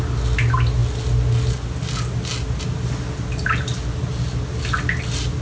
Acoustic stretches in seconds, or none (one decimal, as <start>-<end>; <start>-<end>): 0.0-5.4